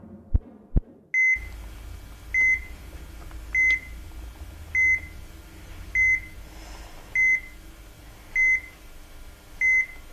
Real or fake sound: real